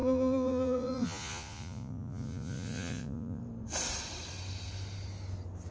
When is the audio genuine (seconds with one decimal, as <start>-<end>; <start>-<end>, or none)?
3.4-5.7